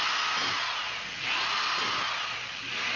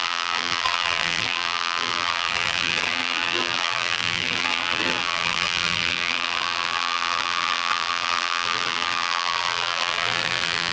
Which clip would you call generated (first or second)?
second